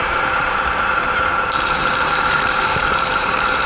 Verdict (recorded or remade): remade